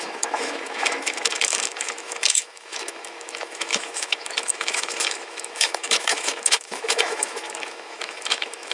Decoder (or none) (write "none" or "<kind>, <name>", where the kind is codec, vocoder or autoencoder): autoencoder, DAC-VAE